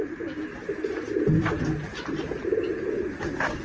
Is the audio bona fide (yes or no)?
yes